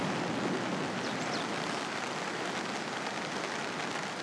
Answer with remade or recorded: recorded